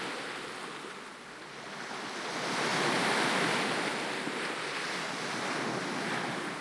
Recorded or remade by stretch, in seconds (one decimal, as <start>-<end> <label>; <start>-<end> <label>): 0.0-6.6 recorded